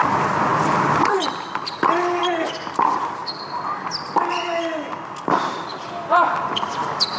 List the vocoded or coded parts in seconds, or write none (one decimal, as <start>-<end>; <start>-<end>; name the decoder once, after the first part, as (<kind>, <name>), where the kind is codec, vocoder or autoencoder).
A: none